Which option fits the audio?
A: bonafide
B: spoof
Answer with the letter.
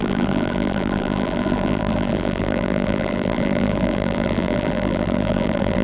B